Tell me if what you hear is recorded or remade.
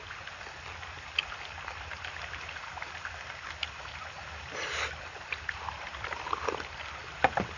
recorded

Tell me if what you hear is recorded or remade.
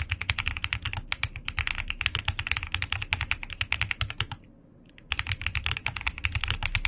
recorded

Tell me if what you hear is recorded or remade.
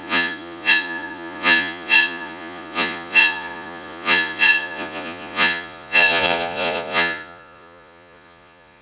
remade